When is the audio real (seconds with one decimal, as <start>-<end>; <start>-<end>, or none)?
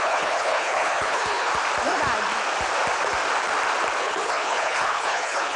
1.5-4.0